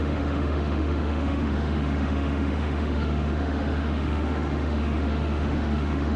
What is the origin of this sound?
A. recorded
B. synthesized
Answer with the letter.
B